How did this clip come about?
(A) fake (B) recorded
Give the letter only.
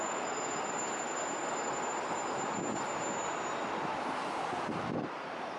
B